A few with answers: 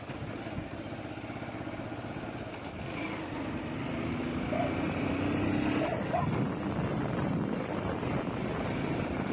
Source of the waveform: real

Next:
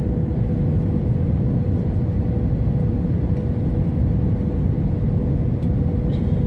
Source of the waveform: real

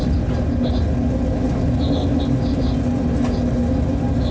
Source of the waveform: real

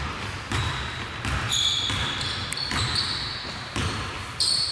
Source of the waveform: real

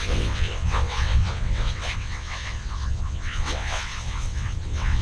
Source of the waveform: fake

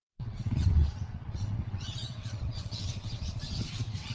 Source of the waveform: fake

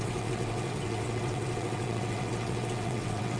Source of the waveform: fake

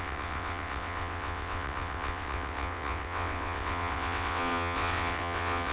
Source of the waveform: fake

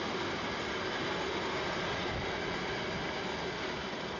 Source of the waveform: real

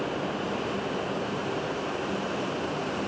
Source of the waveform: real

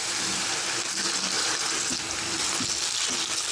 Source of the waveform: real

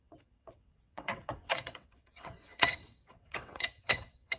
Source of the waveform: fake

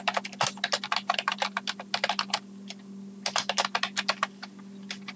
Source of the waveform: real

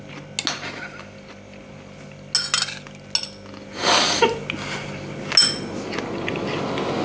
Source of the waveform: real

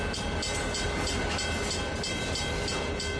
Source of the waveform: real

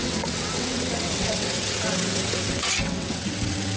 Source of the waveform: fake